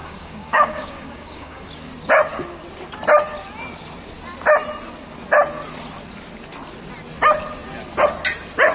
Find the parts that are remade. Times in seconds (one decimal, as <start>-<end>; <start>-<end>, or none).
0.0-1.7